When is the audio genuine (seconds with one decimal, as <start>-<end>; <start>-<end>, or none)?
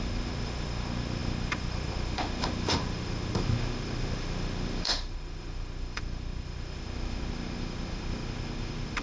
none